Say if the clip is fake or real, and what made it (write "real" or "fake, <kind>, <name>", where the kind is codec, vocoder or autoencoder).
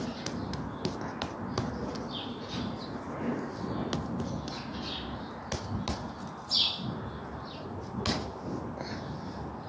real